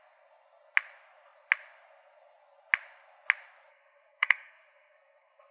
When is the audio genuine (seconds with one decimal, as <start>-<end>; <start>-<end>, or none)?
0.0-3.7

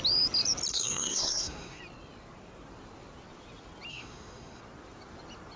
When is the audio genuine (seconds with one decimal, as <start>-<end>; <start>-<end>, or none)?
0.0-0.7; 1.8-3.9; 4.6-5.6

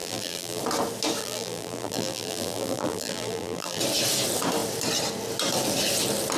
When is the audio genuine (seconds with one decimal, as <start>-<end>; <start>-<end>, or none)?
0.6-1.2; 3.8-6.4

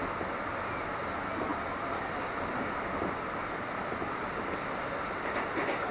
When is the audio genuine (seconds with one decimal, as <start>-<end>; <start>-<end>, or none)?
0.0-5.9

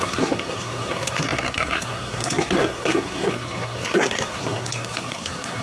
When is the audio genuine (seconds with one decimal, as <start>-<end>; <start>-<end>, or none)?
none

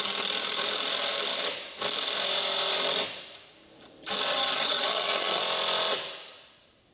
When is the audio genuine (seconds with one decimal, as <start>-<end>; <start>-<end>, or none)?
0.0-4.3; 5.4-6.9

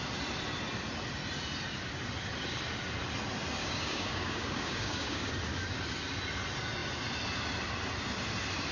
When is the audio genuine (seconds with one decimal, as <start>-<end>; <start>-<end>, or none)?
0.0-3.6; 5.3-8.7

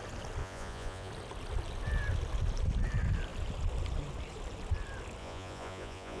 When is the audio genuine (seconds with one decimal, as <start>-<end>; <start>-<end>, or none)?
0.0-0.4; 1.1-5.2